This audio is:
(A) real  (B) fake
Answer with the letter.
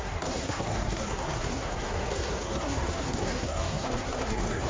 B